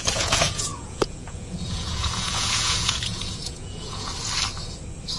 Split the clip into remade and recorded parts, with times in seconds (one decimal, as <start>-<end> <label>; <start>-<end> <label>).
0.0-4.1 remade; 4.1-5.2 recorded